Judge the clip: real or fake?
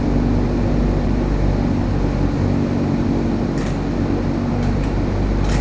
real